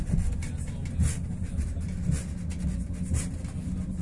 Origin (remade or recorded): recorded